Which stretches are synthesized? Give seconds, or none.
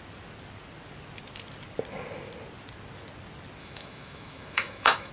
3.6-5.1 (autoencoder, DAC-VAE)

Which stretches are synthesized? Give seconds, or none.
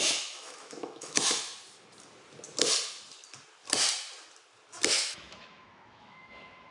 0.0-1.5 (autoencoder, DAC-VAE); 4.9-6.7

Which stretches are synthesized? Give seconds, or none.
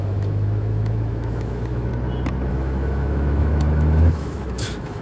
0.0-1.9 (autoencoder, DAC-VAE); 2.5-5.0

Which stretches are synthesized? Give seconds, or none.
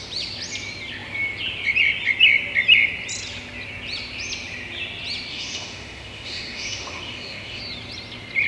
5.3-7.6 (autoencoder, DAC-VAE)